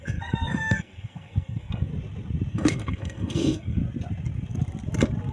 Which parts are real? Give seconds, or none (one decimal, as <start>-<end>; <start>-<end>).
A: 1.9-2.5; 3.8-5.3

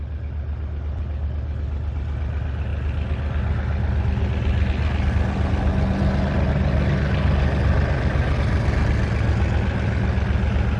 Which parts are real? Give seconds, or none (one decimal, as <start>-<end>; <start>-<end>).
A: 0.0-10.8